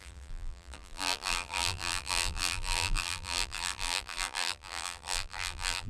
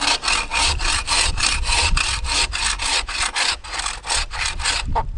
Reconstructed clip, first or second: first